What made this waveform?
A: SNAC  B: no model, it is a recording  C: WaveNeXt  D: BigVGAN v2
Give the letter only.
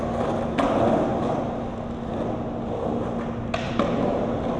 B